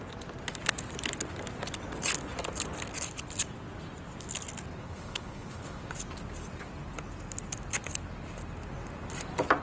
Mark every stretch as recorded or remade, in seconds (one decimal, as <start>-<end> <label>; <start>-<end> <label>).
0.0-4.8 recorded; 4.8-5.8 remade; 5.8-9.6 recorded

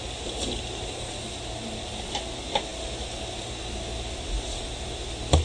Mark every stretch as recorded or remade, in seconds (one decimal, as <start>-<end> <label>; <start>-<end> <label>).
0.0-5.4 recorded

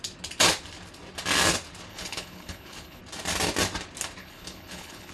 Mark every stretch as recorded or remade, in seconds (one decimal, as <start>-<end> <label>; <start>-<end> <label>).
0.0-1.9 recorded; 1.9-3.0 remade; 3.0-4.2 recorded; 4.2-5.1 remade

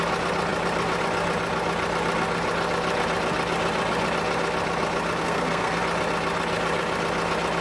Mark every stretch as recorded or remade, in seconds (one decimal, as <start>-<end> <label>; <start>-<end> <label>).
0.0-5.2 recorded; 5.2-5.8 remade; 5.8-7.6 recorded

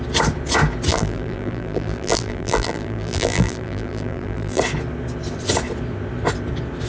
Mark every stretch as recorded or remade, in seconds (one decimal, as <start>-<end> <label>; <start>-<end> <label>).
0.0-0.9 recorded; 0.9-4.6 remade; 4.6-6.9 recorded

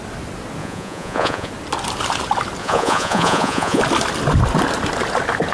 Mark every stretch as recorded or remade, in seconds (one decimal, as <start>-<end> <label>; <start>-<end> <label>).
0.0-0.6 recorded; 0.6-1.5 remade; 1.5-2.6 recorded; 2.6-3.8 remade; 3.8-5.5 recorded